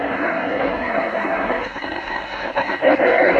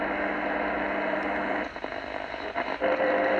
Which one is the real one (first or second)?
second